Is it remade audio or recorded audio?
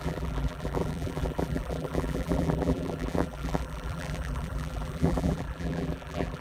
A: remade